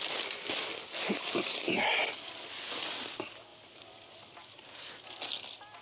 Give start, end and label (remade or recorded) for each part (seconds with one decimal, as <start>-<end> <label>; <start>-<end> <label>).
0.0-3.5 recorded; 3.5-4.7 remade; 4.7-5.8 recorded